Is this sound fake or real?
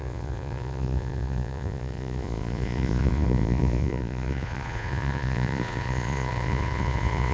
fake